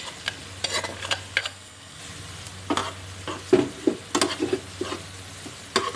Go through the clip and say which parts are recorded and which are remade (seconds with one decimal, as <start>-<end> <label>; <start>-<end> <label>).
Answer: 0.0-1.4 recorded; 1.4-2.0 remade; 2.0-6.0 recorded